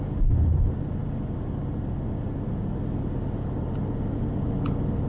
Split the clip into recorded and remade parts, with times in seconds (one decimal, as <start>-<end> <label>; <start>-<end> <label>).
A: 0.0-5.1 recorded